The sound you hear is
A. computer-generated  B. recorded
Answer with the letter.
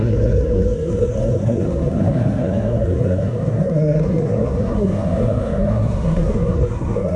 A